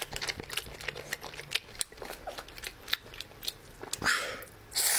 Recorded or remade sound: recorded